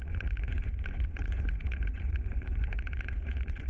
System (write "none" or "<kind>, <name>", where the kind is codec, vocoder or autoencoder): vocoder, Vocos